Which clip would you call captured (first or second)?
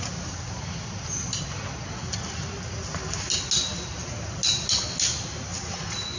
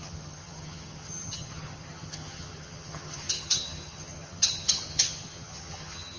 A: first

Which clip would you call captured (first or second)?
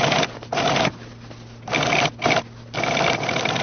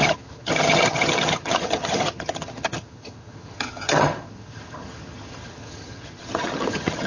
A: first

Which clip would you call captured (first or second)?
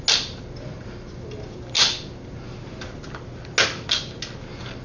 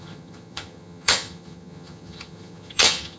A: first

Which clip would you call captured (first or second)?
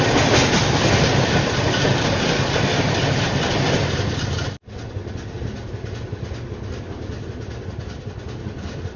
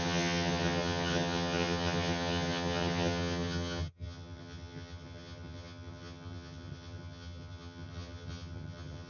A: first